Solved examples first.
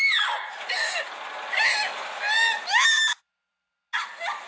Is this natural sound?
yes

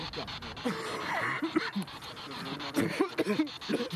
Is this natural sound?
yes